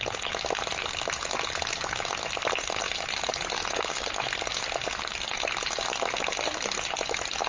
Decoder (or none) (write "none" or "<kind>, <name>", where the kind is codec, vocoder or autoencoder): none